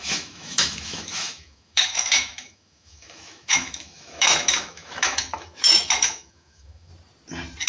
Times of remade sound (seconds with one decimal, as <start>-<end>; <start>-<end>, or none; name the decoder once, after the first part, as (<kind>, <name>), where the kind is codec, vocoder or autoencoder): 0.0-6.9 (autoencoder, DAC-VAE)

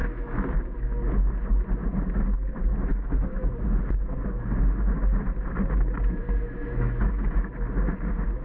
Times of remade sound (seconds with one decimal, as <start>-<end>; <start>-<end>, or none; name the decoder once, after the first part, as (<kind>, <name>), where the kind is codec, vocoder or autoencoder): 0.0-0.5 (autoencoder, DAC-VAE); 2.9-3.5; 6.2-7.5

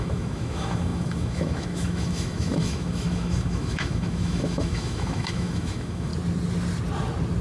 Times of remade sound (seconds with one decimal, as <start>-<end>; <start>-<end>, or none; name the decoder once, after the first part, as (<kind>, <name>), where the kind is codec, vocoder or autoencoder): 0.0-6.1 (autoencoder, DAC-VAE)

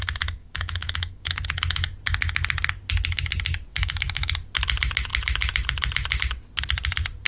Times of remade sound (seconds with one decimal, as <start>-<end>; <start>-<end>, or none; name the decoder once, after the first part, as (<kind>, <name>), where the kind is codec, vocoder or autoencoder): 0.4-1.3 (autoencoder, DAC-VAE); 3.7-4.3

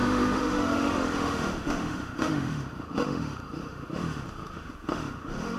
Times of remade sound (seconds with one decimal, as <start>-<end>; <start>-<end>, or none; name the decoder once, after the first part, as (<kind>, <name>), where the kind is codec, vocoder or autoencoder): 0.0-5.6 (autoencoder, DAC-VAE)

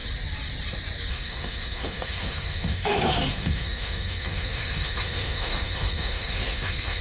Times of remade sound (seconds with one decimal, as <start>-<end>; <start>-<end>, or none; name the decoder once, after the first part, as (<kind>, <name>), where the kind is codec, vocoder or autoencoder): 1.1-7.0 (autoencoder, DAC-VAE)